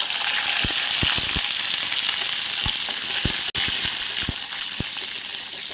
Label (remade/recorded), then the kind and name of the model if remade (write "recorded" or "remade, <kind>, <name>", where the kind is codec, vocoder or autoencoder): recorded